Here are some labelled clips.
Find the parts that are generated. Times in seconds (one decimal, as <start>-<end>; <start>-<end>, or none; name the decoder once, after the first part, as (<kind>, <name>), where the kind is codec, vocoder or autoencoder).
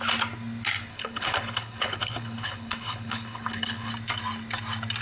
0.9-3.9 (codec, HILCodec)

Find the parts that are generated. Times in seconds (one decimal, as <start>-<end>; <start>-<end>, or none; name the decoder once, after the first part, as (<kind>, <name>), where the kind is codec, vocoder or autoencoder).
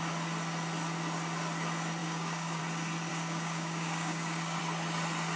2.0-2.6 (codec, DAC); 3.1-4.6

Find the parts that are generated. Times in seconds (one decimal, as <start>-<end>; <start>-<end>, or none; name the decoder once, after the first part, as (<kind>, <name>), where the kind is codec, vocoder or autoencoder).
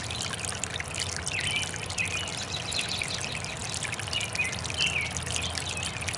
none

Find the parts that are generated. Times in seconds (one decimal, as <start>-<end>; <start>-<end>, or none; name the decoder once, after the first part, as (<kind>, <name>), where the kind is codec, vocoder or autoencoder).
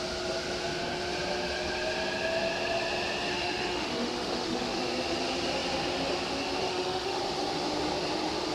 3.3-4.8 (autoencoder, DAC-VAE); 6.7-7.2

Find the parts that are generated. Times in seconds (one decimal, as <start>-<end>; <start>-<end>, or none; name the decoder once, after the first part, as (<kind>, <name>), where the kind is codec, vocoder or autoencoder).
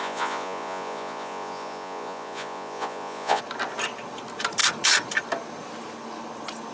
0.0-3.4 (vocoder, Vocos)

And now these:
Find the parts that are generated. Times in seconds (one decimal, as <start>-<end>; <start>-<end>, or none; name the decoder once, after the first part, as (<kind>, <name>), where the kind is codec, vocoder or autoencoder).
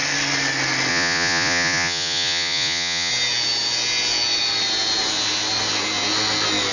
0.9-3.1 (vocoder, Vocos)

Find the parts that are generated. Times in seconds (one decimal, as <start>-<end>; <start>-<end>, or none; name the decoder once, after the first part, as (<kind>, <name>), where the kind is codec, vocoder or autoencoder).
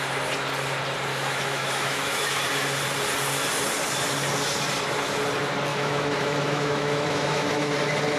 1.1-2.4 (autoencoder, DAC-VAE); 5.7-7.7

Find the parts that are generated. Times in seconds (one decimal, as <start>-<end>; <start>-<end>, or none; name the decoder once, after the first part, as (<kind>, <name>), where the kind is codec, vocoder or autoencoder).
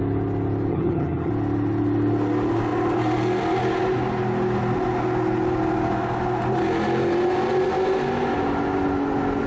0.7-1.3 (vocoder, HiFi-GAN)